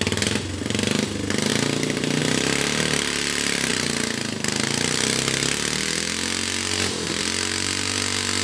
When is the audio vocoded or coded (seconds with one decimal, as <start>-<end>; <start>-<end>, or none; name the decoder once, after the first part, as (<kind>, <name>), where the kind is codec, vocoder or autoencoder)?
none